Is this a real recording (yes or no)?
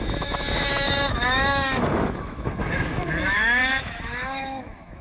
no